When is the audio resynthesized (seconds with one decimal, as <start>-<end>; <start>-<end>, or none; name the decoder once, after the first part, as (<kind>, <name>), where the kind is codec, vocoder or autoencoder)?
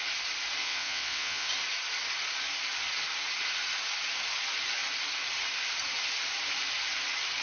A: 0.6-1.5 (vocoder, WaveNeXt)